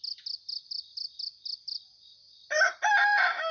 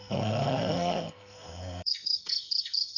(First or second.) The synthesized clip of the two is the second